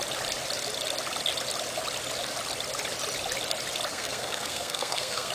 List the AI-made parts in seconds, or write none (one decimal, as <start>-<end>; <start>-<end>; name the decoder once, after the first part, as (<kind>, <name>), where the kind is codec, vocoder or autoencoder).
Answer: 3.9-5.3 (codec, SNAC)